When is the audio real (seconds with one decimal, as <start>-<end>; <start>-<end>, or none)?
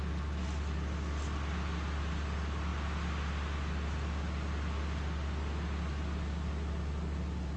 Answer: 0.0-7.6